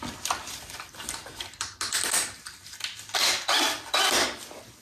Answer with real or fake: real